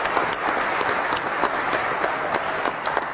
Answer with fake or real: real